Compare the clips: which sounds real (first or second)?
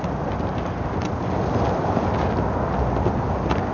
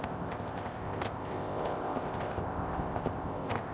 first